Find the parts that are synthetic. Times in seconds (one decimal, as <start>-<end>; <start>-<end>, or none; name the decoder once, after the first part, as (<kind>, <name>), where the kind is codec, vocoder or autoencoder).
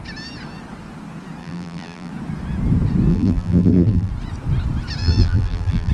1.4-2.1 (vocoder, BigVGAN v2); 3.1-4.1; 5.0-5.9